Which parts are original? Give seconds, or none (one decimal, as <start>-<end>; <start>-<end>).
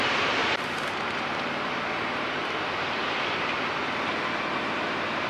3.0-4.6